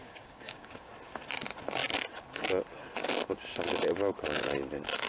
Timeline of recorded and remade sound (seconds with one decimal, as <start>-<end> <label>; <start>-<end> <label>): 0.0-0.9 remade; 0.9-5.1 recorded